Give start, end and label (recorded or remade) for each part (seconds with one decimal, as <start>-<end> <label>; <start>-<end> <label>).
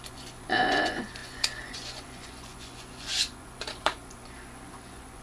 0.0-5.2 remade